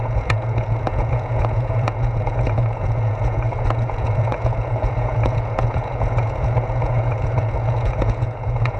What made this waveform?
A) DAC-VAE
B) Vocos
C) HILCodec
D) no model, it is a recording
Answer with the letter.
B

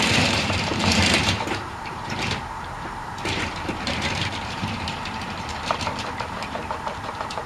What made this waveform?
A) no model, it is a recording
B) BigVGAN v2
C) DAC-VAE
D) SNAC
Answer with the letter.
B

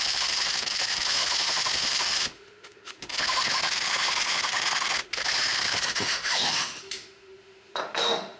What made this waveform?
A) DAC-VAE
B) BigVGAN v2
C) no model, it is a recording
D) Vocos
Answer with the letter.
A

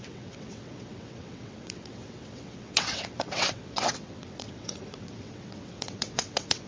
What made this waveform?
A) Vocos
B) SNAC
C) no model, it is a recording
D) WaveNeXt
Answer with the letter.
D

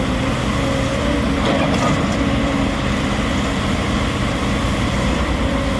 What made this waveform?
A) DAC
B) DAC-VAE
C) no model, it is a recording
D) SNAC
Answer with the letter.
C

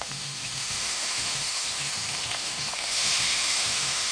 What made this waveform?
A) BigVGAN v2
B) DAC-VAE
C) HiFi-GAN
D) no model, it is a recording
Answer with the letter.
B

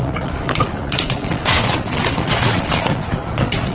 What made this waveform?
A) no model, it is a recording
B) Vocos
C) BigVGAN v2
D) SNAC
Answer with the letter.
B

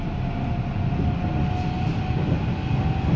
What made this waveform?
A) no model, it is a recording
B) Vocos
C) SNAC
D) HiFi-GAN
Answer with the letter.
A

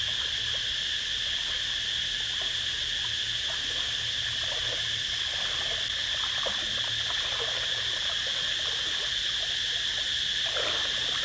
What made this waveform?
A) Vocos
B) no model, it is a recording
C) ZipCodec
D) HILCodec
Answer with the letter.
B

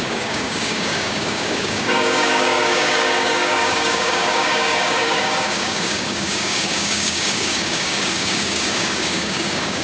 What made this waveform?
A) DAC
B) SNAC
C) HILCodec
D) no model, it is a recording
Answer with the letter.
A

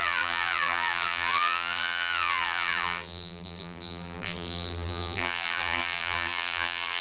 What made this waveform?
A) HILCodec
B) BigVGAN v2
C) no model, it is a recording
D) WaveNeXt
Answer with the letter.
B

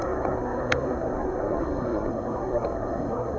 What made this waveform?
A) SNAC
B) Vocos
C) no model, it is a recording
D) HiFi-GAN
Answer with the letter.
A